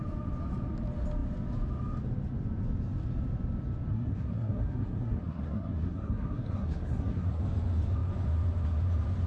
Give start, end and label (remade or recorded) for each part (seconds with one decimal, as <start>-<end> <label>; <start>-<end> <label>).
0.0-3.9 recorded; 3.9-7.4 remade; 7.4-9.3 recorded